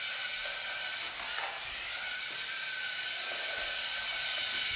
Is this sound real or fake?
real